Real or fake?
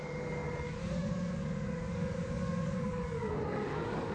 fake